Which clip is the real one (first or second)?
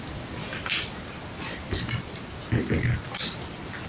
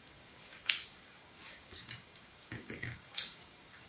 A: first